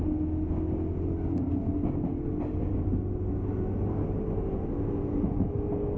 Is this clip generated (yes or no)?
no